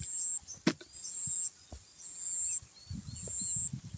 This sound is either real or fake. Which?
real